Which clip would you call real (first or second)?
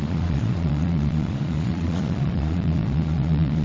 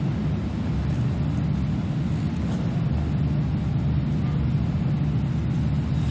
second